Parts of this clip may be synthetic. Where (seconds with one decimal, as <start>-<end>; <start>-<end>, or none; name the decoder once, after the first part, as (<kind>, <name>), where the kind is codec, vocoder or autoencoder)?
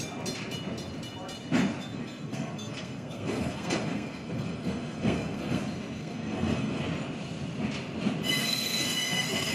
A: 1.8-5.6 (codec, SNAC); 6.0-6.8; 8.4-9.5